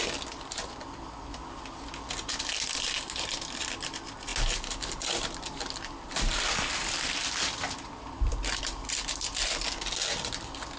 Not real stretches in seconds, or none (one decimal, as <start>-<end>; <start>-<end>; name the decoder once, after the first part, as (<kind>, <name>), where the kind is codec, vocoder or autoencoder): none